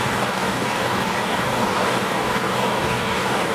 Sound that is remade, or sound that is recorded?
remade